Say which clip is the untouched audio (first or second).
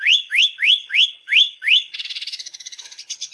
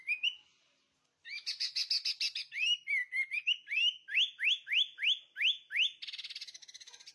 second